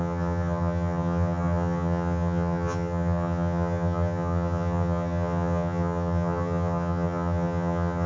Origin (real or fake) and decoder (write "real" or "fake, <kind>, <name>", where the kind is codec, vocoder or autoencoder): fake, vocoder, HiFi-GAN